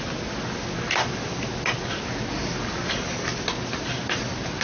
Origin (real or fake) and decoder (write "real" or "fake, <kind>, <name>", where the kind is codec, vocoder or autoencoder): real